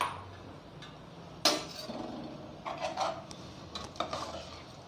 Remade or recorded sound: recorded